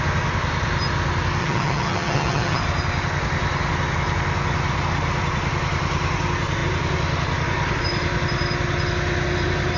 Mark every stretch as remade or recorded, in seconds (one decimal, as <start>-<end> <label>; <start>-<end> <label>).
0.0-1.4 recorded; 1.4-2.6 remade; 2.6-9.8 recorded